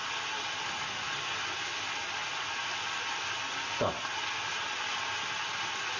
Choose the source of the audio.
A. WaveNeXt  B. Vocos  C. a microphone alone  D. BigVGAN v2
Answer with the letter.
C